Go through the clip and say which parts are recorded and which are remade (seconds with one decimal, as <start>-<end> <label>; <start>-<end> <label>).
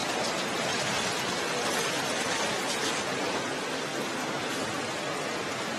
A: 0.0-5.8 recorded